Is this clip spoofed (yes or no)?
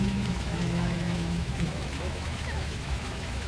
yes